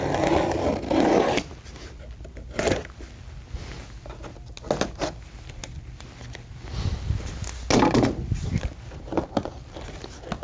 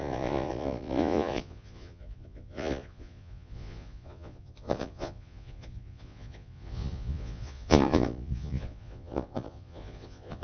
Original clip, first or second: first